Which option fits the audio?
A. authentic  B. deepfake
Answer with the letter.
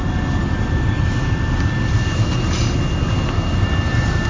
A